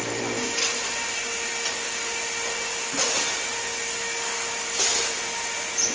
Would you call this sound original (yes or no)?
yes